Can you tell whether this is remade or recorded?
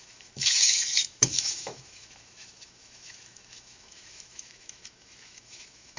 remade